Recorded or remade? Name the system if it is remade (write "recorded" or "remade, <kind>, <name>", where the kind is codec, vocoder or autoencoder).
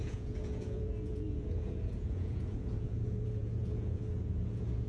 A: remade, vocoder, Vocos